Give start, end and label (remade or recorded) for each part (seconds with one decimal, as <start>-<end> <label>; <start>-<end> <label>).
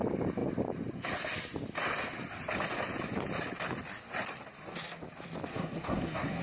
0.0-5.5 recorded; 5.5-6.4 remade